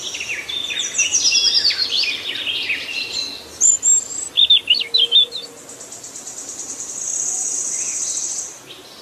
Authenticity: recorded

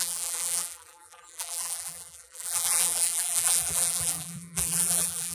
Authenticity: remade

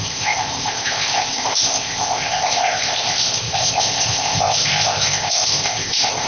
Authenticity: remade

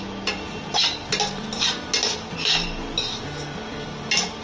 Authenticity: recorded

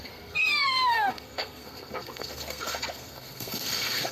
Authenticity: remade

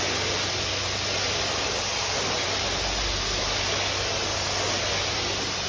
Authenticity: recorded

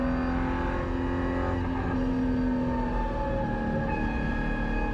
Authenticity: recorded